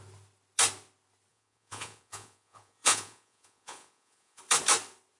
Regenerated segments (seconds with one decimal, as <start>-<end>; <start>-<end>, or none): 1.3-4.4